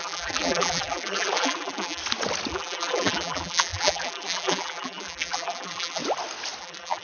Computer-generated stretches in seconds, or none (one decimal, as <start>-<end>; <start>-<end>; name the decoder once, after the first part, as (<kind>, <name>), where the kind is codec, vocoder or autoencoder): 0.0-2.0 (vocoder, BigVGAN v2); 2.5-6.0; 6.6-7.0